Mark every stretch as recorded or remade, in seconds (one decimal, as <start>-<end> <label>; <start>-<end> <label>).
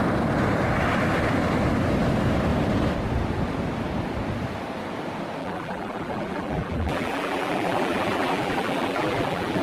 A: 0.0-5.4 recorded; 5.4-9.6 remade